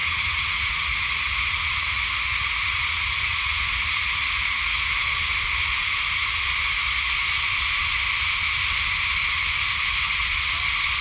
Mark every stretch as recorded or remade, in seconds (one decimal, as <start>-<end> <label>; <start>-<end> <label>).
0.0-4.9 remade; 4.9-11.0 recorded